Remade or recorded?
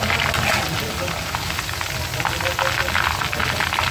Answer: recorded